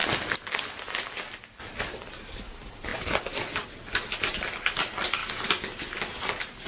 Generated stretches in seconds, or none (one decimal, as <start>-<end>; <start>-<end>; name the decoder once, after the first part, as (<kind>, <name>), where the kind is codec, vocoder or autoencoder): none